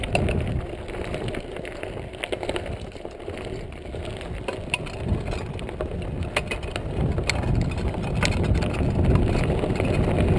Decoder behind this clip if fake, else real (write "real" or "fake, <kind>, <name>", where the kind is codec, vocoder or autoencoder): real